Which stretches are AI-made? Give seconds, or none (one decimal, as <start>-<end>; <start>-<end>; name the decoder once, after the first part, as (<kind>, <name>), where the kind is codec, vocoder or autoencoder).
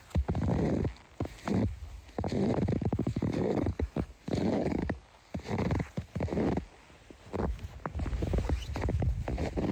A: 3.1-5.2 (codec, DAC)